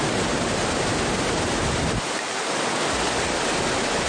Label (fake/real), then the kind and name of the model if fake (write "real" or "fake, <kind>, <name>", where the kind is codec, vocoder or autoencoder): real